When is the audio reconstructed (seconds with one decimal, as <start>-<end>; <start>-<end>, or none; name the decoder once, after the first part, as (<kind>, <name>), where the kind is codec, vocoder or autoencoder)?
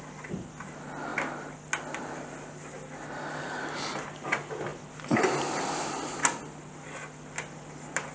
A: none